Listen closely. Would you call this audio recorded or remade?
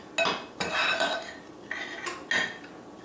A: recorded